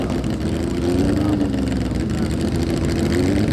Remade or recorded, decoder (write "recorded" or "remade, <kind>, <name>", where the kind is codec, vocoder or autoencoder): recorded